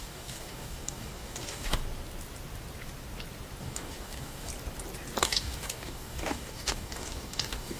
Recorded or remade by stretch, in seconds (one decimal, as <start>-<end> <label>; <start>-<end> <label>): 0.0-1.8 remade; 1.8-3.6 recorded; 3.6-4.5 remade; 4.5-5.2 recorded; 5.2-7.8 remade